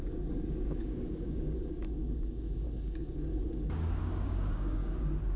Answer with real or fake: fake